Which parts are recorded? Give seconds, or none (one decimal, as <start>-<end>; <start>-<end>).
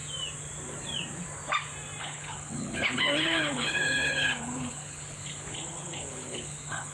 0.0-2.0